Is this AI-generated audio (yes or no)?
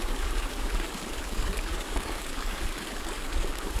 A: yes